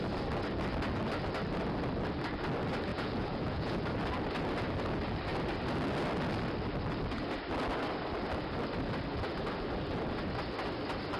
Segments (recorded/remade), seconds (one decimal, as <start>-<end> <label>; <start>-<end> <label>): 0.0-2.9 recorded; 2.9-3.8 remade; 3.8-11.2 recorded